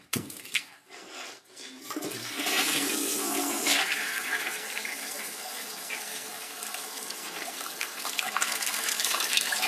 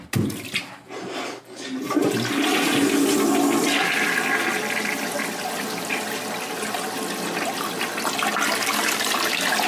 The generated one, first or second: first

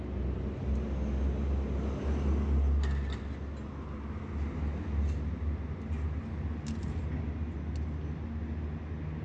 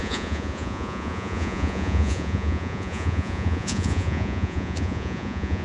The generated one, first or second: second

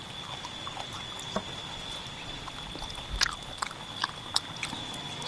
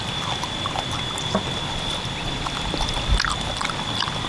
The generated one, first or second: second